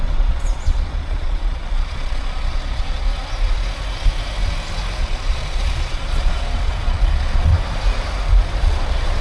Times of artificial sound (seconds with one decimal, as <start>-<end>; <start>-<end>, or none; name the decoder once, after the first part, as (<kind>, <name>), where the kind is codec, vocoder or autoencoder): 0.0-3.1 (vocoder, Vocos); 5.0-7.5; 8.6-9.2